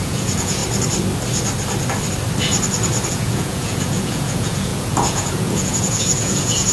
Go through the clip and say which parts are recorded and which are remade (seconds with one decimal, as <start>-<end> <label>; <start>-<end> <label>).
0.0-0.6 remade; 0.6-3.1 recorded; 3.1-6.7 remade